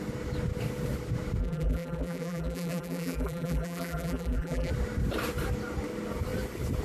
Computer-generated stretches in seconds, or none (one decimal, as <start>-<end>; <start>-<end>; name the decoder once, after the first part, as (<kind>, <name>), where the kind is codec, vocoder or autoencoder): 1.4-4.7 (vocoder, BigVGAN v2)